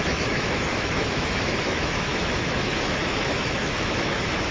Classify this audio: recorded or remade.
remade